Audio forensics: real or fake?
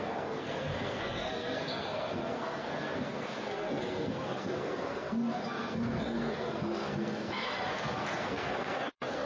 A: fake